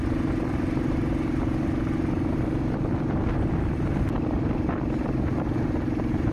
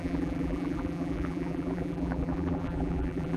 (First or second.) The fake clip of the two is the second